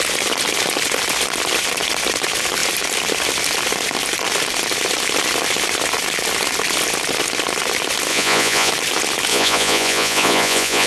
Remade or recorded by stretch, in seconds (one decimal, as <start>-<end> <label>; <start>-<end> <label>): 0.0-8.1 recorded; 8.1-8.7 remade; 8.7-9.3 recorded; 9.3-10.9 remade